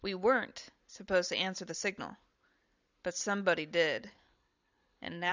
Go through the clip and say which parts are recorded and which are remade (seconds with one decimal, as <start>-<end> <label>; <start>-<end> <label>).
0.0-4.0 recorded; 4.0-5.3 remade